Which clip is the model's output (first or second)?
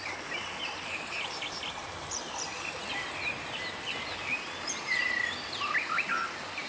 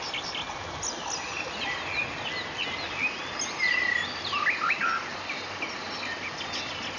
first